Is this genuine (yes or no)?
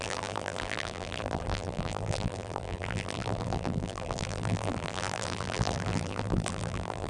no